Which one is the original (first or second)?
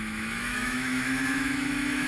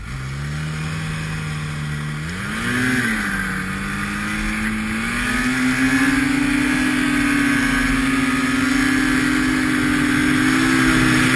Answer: second